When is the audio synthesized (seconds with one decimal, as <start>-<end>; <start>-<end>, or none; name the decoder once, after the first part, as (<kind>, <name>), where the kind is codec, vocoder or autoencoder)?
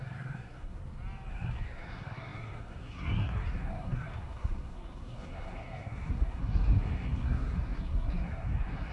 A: 0.0-0.8 (codec, SNAC); 1.3-8.9